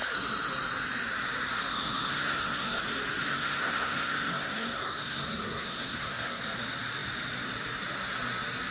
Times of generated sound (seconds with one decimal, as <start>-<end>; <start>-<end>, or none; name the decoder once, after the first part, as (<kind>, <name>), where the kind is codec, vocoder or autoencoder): 2.1-2.8 (codec, SNAC); 3.2-6.4